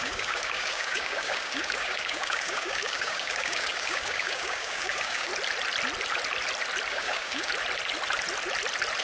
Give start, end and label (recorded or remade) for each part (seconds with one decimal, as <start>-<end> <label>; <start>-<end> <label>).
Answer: 0.0-5.3 remade; 5.3-6.9 recorded; 6.9-7.5 remade; 7.5-9.0 recorded